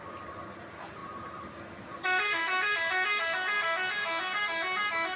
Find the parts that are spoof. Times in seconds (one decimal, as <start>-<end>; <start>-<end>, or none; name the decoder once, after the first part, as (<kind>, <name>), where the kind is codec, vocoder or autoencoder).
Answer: none